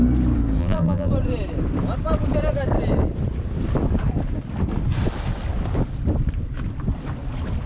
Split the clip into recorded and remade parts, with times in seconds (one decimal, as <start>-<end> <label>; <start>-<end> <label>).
0.0-0.6 recorded; 0.6-1.1 remade; 1.1-7.7 recorded